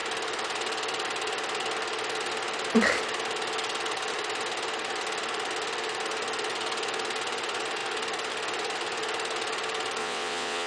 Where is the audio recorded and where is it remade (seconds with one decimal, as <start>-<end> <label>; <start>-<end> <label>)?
0.0-10.0 recorded; 10.0-10.7 remade